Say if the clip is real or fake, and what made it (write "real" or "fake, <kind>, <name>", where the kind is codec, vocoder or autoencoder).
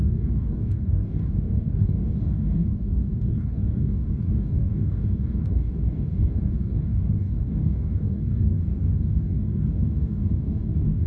fake, codec, DAC